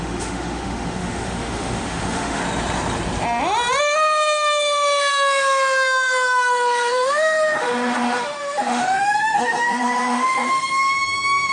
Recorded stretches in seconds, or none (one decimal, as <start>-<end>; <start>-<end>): 2.4-3.8

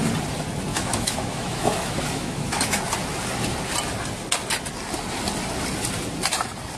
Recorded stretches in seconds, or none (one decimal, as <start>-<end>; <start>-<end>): 0.0-0.7; 2.8-6.8

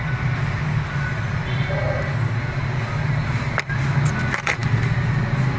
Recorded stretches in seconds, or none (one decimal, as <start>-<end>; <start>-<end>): 0.0-5.6